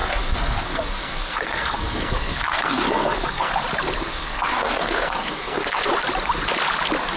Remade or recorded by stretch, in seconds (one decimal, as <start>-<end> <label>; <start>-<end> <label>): 0.0-3.5 remade; 3.5-4.1 recorded; 4.1-5.9 remade; 5.9-7.2 recorded